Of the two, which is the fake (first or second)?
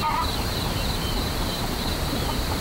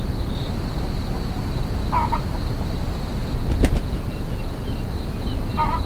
first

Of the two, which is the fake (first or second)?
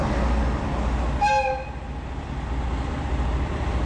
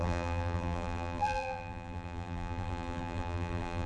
second